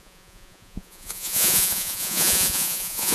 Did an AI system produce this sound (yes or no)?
yes